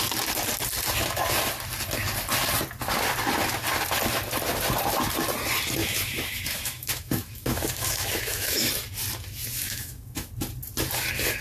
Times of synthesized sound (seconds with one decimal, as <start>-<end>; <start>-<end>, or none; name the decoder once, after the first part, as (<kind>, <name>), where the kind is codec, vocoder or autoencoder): 5.8-8.7 (autoencoder, DAC-VAE); 9.5-10.3

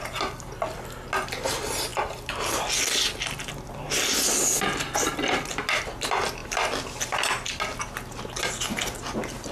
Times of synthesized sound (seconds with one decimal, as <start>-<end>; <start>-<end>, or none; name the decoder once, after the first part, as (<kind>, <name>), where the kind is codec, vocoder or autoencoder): none

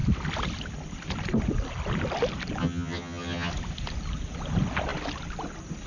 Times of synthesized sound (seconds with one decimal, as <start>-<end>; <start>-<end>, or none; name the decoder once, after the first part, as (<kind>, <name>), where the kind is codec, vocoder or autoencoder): 2.6-3.5 (vocoder, HiFi-GAN)

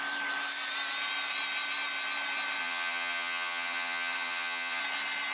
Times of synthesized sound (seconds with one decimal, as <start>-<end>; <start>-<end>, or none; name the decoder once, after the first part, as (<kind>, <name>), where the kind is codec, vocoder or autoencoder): 2.6-4.8 (vocoder, HiFi-GAN)